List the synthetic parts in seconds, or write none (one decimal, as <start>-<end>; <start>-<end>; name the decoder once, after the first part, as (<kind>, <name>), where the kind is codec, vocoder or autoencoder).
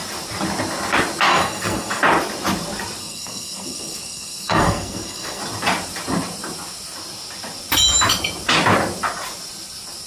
1.3-2.0 (codec, SNAC); 3.0-5.4